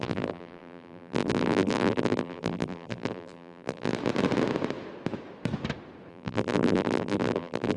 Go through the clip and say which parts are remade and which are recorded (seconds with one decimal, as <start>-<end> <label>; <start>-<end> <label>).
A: 0.0-3.9 remade; 3.9-6.1 recorded; 6.1-7.8 remade